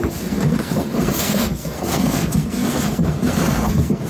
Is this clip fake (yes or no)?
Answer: yes